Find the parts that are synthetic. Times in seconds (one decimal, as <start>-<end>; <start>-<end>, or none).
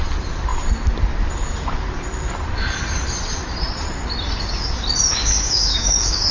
5.2-6.3